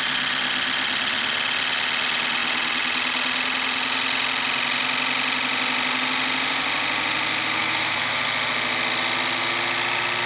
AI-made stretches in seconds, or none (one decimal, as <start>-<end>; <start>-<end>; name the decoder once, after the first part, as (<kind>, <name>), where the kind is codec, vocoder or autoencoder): 7.6-8.2 (autoencoder, DAC-VAE)